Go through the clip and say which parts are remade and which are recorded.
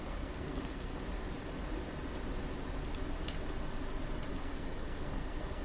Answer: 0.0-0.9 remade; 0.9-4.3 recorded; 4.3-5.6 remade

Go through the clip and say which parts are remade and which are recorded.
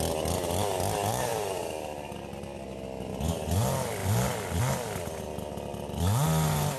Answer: 0.0-6.8 recorded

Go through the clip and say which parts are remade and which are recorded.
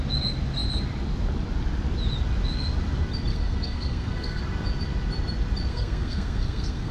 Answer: 0.0-3.3 recorded; 3.3-4.4 remade; 4.4-5.7 recorded; 5.7-6.9 remade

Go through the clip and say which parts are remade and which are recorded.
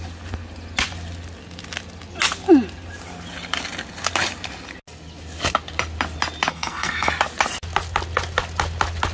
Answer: 0.0-6.5 recorded; 6.5-7.1 remade; 7.1-9.1 recorded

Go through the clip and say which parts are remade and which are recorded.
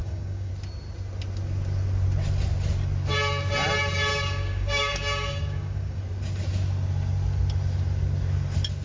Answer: 0.0-0.5 remade; 0.5-4.1 recorded; 4.1-6.0 remade; 6.0-8.8 recorded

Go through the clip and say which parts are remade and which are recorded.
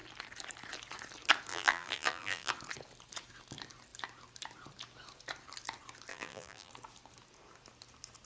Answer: 0.0-1.5 recorded; 1.5-2.5 remade; 2.5-6.1 recorded; 6.1-6.7 remade; 6.7-8.3 recorded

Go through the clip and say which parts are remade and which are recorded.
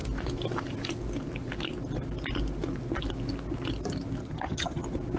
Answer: 0.0-4.2 recorded; 4.2-4.8 remade; 4.8-5.2 recorded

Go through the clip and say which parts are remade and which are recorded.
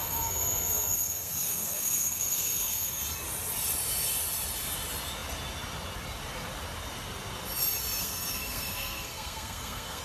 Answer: 0.0-3.0 remade; 3.0-8.0 recorded; 8.0-10.0 remade